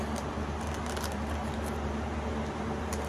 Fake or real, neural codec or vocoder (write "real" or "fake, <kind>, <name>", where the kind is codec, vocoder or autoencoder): real